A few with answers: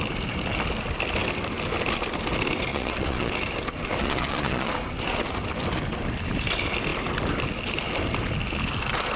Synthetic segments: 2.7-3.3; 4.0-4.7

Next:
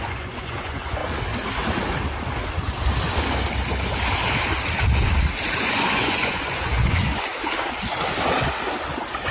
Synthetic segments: 0.0-1.0; 5.6-7.3